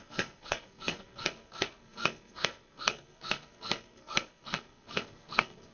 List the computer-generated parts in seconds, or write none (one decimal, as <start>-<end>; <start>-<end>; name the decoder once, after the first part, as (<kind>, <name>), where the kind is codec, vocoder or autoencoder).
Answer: 0.0-5.7 (codec, SNAC)